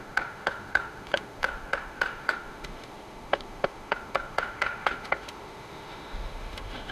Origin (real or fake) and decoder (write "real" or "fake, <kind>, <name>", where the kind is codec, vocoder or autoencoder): fake, autoencoder, DAC-VAE